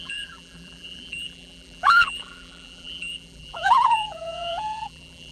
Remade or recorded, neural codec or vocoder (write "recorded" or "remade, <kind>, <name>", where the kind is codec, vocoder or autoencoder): remade, vocoder, BigVGAN v2